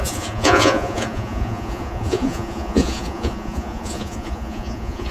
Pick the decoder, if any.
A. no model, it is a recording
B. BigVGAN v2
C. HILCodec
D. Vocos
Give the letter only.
D